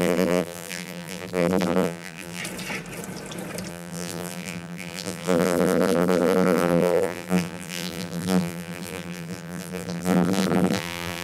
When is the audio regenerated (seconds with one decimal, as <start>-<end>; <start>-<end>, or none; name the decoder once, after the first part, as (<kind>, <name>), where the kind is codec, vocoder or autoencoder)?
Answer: 0.0-2.4 (vocoder, BigVGAN v2); 3.7-11.2